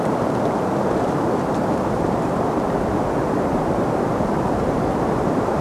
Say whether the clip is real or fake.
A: fake